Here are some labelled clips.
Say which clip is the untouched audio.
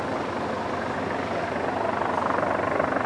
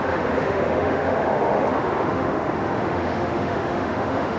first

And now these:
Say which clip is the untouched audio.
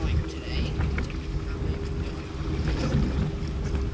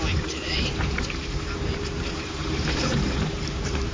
first